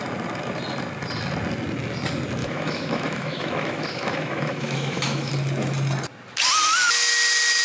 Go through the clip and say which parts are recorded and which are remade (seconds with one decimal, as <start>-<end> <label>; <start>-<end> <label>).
0.0-2.4 recorded; 2.4-5.3 remade; 5.3-7.6 recorded